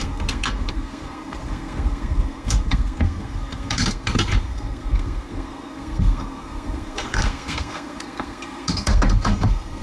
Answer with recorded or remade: remade